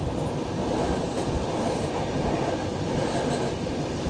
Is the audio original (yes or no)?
yes